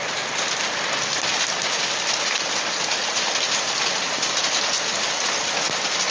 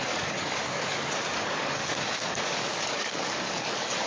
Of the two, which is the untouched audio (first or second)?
first